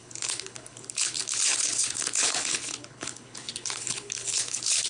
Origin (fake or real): fake